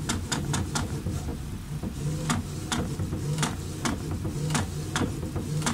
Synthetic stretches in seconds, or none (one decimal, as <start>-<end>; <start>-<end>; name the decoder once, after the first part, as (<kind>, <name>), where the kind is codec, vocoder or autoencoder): none